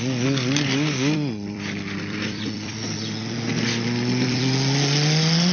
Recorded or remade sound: remade